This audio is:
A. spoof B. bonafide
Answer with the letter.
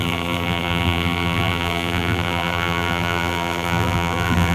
A